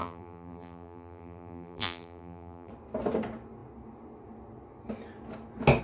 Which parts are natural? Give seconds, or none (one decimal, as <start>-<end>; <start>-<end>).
2.7-5.8